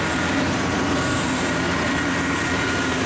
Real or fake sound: fake